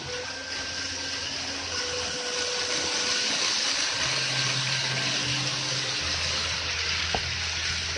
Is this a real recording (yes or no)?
yes